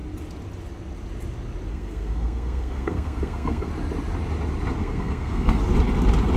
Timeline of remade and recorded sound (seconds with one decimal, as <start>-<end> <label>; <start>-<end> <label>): 0.0-1.7 recorded; 1.7-3.7 remade; 3.7-4.8 recorded; 4.8-5.6 remade; 5.6-6.4 recorded